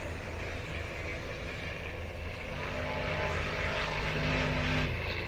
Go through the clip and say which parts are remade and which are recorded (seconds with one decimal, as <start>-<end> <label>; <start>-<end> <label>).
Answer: 0.0-5.3 recorded